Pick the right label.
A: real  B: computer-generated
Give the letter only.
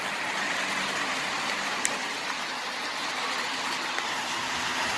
A